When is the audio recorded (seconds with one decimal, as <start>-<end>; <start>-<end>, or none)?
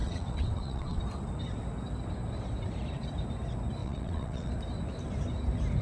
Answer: 1.0-3.8; 4.5-5.8